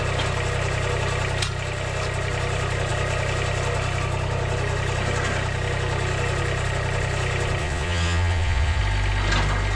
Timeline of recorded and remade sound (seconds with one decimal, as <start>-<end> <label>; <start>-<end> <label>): 0.0-7.6 recorded; 7.6-8.8 remade; 8.8-9.8 recorded